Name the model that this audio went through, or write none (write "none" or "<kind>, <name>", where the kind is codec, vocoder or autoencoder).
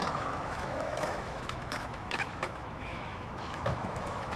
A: autoencoder, DAC-VAE